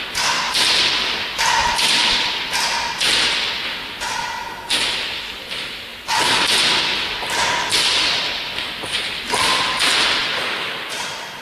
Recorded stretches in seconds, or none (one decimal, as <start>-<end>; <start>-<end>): 0.0-1.6; 2.3-10.2